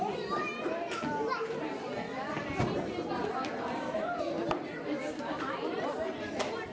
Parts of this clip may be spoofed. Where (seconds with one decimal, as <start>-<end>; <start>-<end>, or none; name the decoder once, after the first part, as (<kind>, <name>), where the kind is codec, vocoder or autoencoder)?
3.2-4.2 (vocoder, BigVGAN v2); 4.7-6.2